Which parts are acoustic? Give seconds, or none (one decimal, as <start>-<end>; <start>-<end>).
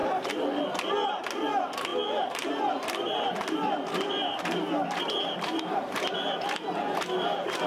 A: 0.0-7.7